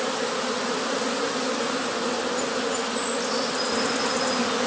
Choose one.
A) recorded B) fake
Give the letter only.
A